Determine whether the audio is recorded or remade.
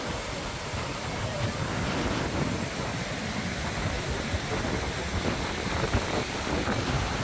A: recorded